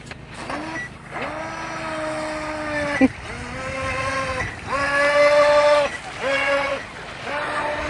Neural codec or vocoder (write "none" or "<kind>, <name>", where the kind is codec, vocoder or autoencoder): none